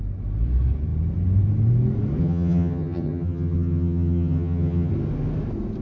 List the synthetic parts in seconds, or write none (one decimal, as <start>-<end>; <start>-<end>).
2.2-4.9